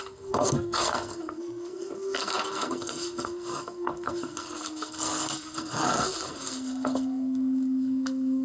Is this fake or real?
fake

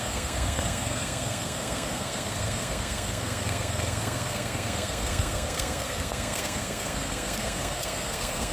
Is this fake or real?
fake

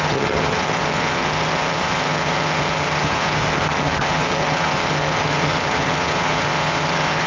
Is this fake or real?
fake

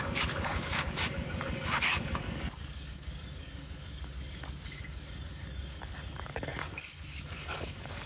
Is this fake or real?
fake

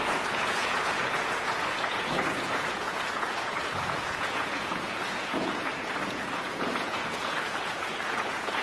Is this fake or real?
fake